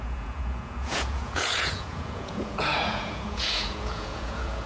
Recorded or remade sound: remade